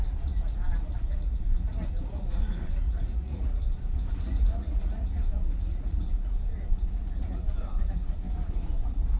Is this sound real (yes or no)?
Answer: no